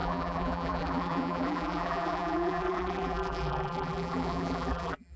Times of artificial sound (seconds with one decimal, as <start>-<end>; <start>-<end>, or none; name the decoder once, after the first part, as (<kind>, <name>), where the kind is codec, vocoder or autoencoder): 0.0-5.2 (vocoder, BigVGAN v2)